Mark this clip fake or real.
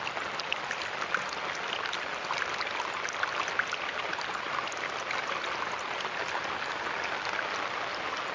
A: real